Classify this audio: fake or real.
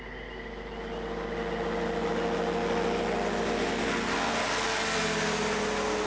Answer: real